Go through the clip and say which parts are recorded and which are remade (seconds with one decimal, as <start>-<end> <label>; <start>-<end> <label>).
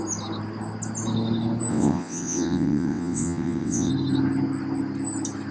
0.0-1.7 recorded; 1.7-3.9 remade; 3.9-5.5 recorded